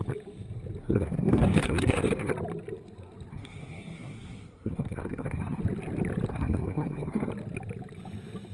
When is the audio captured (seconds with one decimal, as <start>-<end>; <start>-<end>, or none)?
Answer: 0.0-0.8; 2.3-3.3; 5.6-6.3; 7.3-8.5